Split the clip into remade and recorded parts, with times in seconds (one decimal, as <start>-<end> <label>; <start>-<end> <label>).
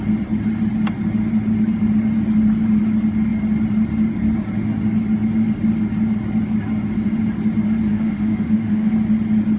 0.0-7.9 recorded; 7.9-8.9 remade; 8.9-9.6 recorded